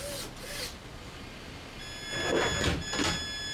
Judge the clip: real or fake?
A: real